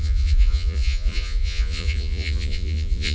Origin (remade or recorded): remade